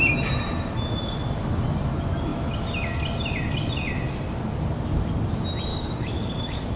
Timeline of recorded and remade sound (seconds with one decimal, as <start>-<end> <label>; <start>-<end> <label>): 0.0-5.7 recorded; 5.7-6.8 remade